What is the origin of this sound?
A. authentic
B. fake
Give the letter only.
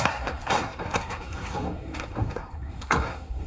B